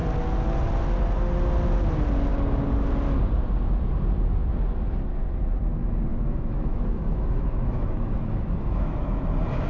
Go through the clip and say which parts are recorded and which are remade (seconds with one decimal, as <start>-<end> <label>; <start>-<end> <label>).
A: 0.0-6.1 recorded; 6.1-9.2 remade; 9.2-9.7 recorded